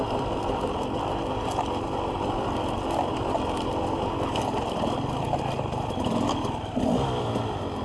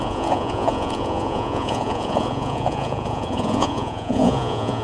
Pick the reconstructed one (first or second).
second